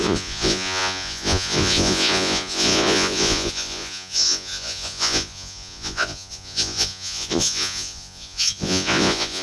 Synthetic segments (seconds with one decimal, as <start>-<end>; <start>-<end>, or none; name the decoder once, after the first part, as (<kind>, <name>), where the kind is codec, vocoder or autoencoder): 0.0-9.4 (vocoder, Vocos)